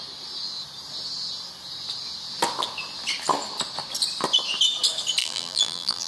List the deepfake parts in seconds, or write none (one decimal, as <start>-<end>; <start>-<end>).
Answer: 5.2-6.1